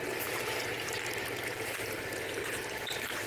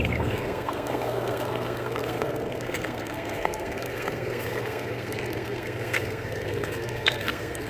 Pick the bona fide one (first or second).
first